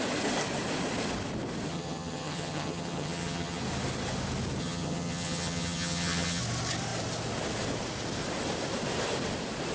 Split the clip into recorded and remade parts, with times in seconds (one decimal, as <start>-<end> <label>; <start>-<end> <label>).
0.0-1.7 recorded; 1.7-3.6 remade; 3.6-4.6 recorded; 4.6-6.4 remade; 6.4-9.7 recorded